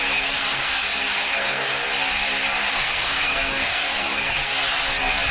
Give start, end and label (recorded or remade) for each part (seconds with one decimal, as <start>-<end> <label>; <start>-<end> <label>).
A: 0.0-1.7 remade; 1.7-2.7 recorded; 2.7-4.5 remade; 4.5-5.3 recorded